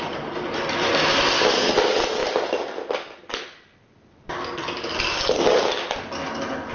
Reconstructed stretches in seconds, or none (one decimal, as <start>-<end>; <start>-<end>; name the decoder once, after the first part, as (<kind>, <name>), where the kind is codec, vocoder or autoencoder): none